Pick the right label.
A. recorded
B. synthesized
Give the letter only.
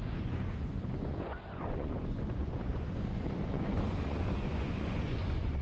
B